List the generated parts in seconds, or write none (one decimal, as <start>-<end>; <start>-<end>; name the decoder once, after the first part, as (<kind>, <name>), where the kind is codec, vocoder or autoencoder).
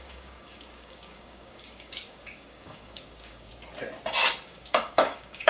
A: 0.0-3.5 (codec, DAC); 4.5-5.5